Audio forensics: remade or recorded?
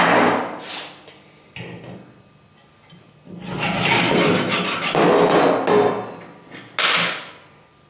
recorded